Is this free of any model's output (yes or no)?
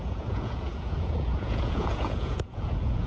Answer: no